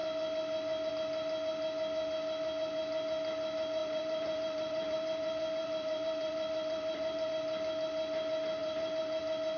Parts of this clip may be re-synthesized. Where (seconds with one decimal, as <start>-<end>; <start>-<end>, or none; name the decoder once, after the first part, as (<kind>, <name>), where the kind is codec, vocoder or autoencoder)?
3.8-7.3 (vocoder, BigVGAN v2); 8.6-9.2